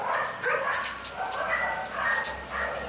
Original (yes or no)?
yes